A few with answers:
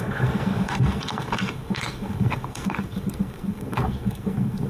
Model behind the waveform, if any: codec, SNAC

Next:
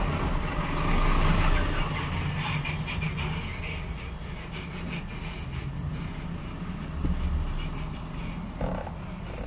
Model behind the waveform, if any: none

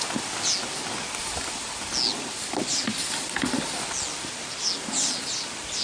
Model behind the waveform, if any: none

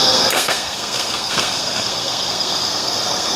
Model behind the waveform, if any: codec, SNAC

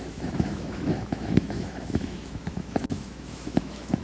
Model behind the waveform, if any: autoencoder, DAC-VAE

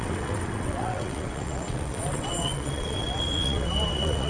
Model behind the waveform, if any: vocoder, WaveNeXt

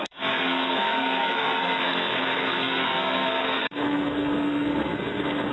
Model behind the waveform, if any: codec, SNAC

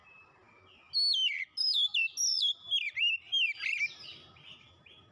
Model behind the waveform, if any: none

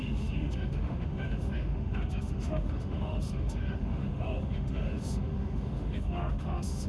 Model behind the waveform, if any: autoencoder, DAC-VAE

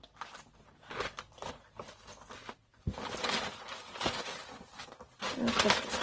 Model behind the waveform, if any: none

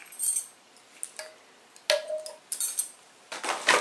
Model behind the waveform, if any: none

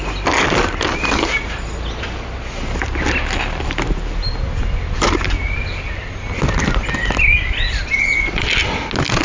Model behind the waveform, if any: none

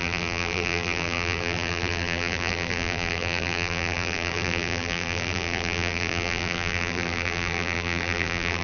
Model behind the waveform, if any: vocoder, BigVGAN v2